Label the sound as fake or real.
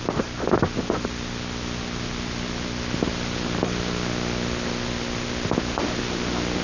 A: real